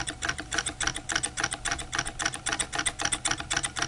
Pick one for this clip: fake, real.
real